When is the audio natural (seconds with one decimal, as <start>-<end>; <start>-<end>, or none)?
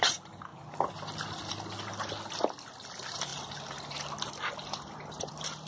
0.0-5.7